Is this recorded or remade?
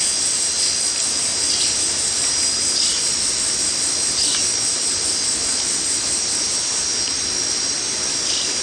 recorded